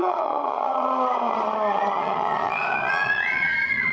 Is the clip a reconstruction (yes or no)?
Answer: yes